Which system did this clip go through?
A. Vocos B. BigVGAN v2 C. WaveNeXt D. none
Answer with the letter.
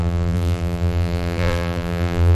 B